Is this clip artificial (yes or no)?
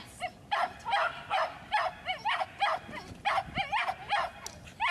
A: no